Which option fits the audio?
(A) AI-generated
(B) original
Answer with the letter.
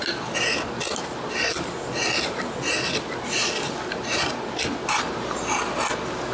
B